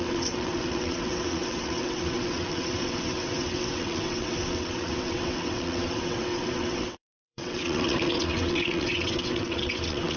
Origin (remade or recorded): remade